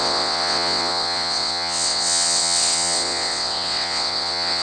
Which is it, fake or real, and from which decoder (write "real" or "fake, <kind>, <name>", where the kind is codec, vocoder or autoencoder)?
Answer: fake, vocoder, WaveNeXt